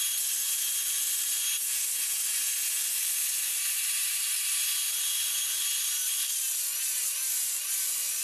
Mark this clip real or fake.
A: real